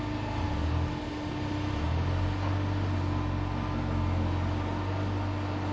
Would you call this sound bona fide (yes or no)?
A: yes